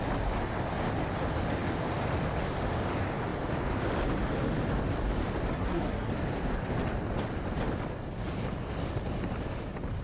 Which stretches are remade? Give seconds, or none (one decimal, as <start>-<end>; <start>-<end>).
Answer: 5.5-6.1